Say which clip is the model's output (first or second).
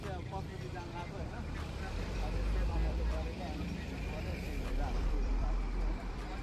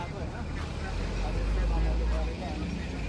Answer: first